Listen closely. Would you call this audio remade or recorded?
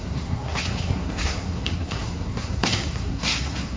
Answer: remade